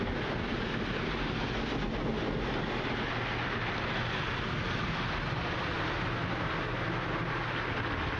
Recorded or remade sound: recorded